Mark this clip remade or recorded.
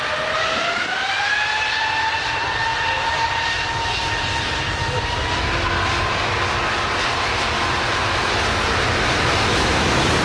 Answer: recorded